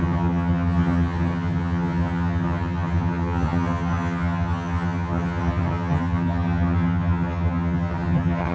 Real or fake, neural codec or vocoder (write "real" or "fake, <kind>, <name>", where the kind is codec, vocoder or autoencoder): fake, vocoder, HiFi-GAN